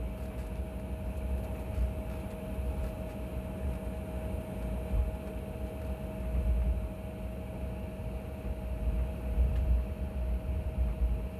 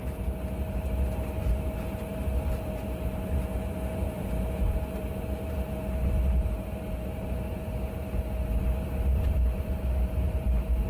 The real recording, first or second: first